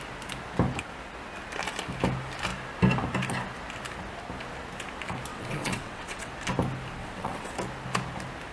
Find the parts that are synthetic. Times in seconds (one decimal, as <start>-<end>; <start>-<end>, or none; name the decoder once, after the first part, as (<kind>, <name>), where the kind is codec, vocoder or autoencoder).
5.3-6.3 (vocoder, WaveNeXt); 7.0-7.5